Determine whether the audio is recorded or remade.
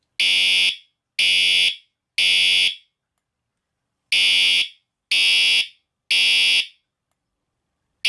recorded